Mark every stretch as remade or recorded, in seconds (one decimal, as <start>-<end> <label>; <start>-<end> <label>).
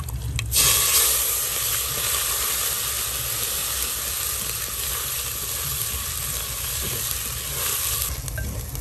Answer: 0.0-8.8 recorded